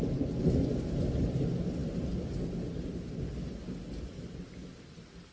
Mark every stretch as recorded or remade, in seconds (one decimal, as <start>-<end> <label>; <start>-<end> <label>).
0.0-5.3 recorded